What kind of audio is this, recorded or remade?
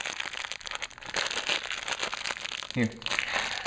recorded